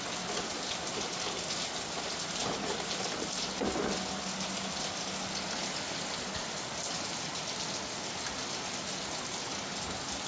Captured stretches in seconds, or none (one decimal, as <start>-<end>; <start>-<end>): 0.0-10.3